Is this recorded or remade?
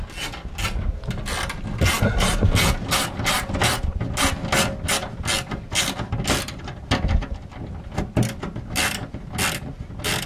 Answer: recorded